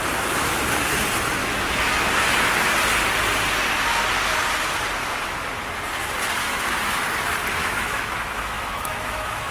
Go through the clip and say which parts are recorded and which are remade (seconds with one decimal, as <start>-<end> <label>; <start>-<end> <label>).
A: 0.0-1.4 recorded; 1.4-2.1 remade; 2.1-5.0 recorded; 5.0-5.5 remade; 5.5-6.4 recorded; 6.4-7.0 remade; 7.0-7.6 recorded; 7.6-9.5 remade